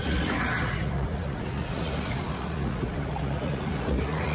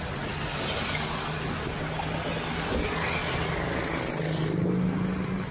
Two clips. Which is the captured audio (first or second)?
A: second